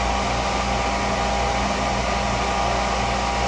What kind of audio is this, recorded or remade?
recorded